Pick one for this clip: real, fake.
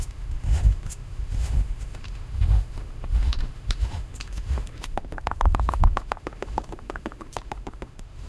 fake